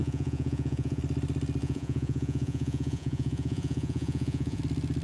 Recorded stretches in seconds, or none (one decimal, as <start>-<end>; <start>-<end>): 1.0-1.6; 4.6-5.0